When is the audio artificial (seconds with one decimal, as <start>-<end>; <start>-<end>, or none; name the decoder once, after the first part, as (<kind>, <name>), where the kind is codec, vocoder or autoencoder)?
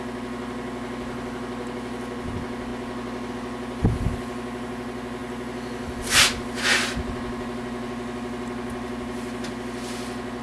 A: none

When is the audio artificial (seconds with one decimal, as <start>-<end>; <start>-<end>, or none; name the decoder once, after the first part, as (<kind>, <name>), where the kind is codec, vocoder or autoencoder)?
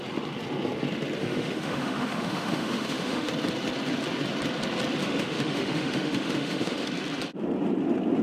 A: 1.2-3.3 (autoencoder, DAC-VAE); 5.0-6.9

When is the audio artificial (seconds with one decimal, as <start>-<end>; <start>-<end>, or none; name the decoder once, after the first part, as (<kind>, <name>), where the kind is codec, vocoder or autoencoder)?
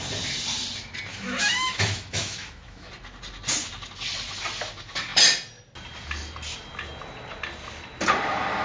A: 1.1-2.9 (autoencoder, DAC-VAE)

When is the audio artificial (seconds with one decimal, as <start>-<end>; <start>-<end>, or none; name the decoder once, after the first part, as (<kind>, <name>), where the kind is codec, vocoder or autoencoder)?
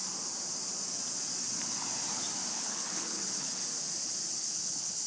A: 2.5-3.6 (codec, HILCodec); 4.4-5.1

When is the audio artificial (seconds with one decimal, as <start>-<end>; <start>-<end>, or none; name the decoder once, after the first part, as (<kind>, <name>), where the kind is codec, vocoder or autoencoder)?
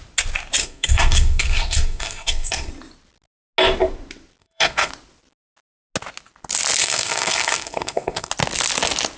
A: 0.6-2.7 (codec, SNAC); 4.4-4.9; 6.8-8.3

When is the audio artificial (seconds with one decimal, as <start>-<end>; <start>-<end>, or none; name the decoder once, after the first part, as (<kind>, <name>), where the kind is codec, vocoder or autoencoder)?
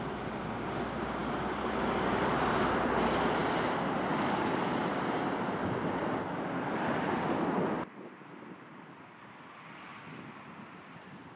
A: none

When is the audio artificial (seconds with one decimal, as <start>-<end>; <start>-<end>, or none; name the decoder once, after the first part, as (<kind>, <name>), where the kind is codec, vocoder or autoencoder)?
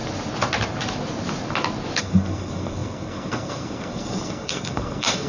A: 2.0-5.3 (codec, SNAC)